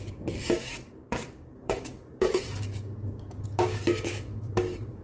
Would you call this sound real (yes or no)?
no